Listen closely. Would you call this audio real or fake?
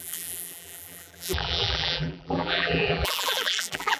fake